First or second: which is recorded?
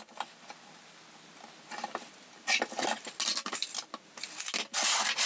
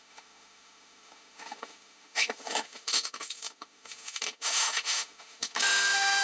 first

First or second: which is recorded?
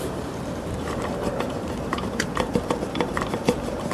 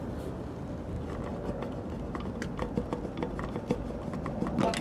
second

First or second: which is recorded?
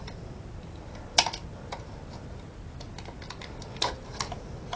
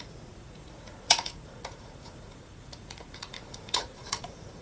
first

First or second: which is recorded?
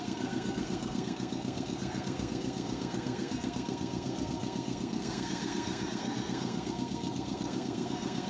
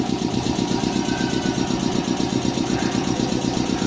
second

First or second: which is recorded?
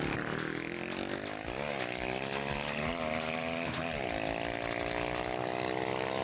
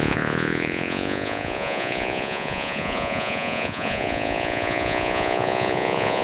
first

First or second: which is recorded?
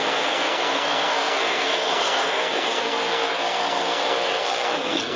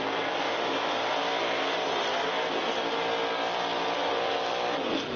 second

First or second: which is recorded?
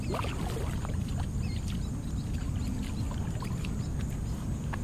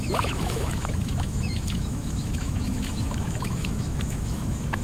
first